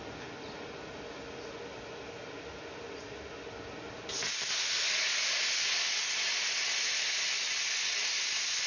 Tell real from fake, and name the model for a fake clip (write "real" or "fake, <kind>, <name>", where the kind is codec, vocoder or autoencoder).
real